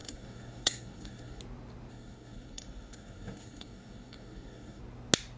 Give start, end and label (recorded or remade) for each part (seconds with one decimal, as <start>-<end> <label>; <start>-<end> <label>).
0.0-1.4 remade; 1.4-1.9 recorded; 1.9-4.8 remade; 4.8-5.4 recorded